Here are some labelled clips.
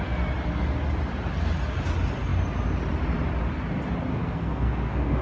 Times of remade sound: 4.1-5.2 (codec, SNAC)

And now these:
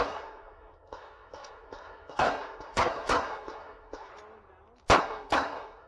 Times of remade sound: 0.0-4.1 (codec, SNAC); 5.0-5.9

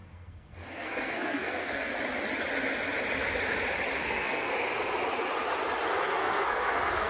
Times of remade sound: 0.0-1.9 (codec, SNAC); 3.9-4.5; 6.0-7.1